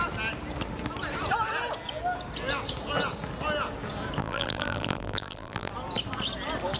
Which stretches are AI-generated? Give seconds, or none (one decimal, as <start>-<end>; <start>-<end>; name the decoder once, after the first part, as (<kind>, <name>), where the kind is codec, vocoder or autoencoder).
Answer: 4.2-5.7 (vocoder, BigVGAN v2)